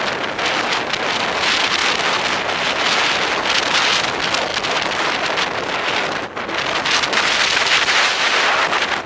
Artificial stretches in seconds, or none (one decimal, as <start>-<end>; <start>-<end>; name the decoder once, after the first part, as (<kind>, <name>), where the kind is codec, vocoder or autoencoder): none